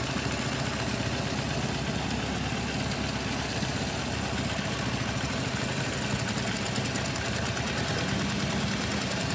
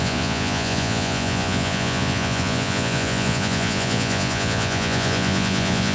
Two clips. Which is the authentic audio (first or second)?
first